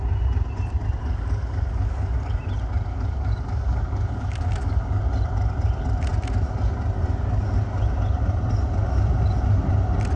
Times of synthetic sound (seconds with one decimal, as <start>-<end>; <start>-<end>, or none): 1.0-2.4; 2.9-5.0